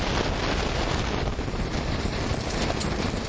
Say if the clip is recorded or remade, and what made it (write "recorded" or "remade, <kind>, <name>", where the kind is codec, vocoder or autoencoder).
recorded